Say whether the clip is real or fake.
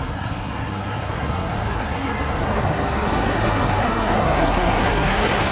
fake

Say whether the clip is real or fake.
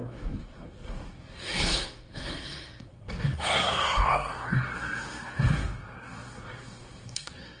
fake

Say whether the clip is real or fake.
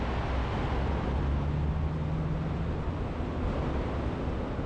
real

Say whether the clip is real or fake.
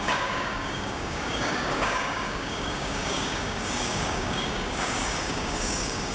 fake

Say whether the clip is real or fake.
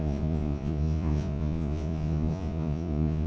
fake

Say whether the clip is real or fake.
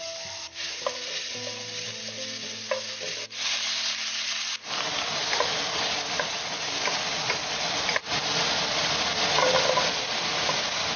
real